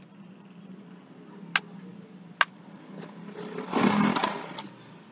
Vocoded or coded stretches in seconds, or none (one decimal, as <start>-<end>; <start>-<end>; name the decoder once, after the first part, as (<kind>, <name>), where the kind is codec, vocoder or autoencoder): none